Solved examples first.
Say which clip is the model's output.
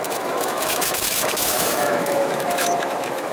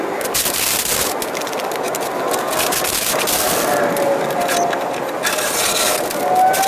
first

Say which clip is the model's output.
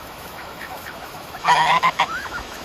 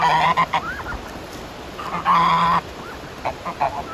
first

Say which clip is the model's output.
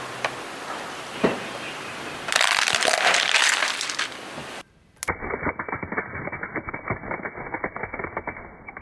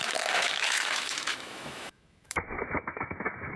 second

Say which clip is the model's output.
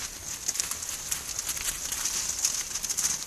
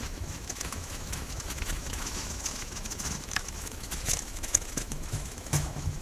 second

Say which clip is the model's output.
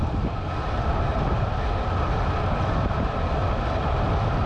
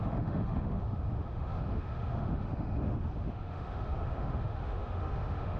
second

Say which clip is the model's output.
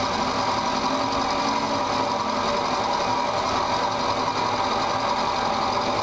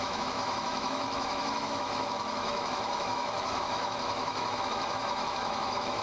second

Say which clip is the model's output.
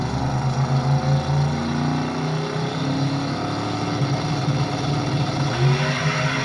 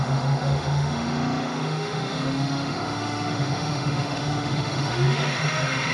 second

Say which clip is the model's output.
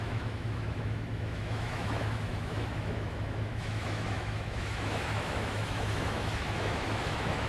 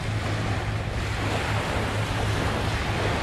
first